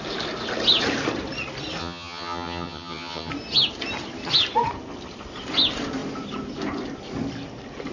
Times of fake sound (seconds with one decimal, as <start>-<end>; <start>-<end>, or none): 1.8-3.3